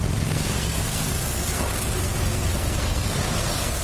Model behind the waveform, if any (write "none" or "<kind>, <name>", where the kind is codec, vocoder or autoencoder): codec, SNAC